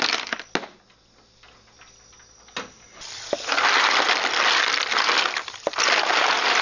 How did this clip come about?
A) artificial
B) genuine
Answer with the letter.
B